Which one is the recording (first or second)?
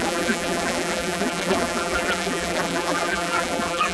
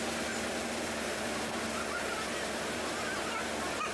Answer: second